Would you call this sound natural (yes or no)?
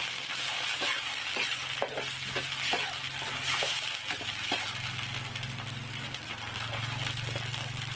yes